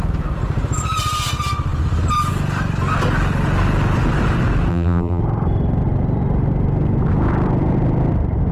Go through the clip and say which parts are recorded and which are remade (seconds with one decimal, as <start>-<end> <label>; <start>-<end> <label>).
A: 0.0-4.7 recorded; 4.7-5.2 remade; 5.2-8.5 recorded